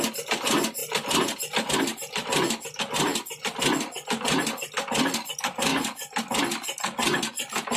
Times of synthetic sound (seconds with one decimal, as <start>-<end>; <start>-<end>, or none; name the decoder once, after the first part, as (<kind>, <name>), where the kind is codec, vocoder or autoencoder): none